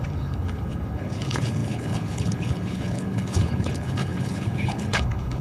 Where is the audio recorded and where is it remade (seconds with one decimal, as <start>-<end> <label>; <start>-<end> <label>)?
0.0-5.4 remade